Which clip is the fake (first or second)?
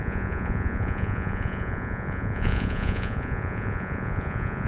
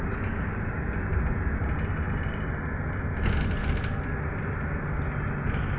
first